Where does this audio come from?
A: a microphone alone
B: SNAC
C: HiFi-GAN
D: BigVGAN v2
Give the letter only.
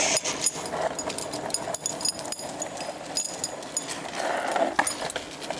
A